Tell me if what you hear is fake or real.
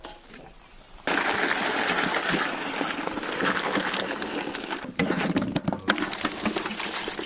real